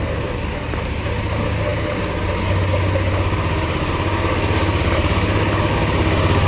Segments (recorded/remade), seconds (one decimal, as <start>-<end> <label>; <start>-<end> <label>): 0.0-6.5 recorded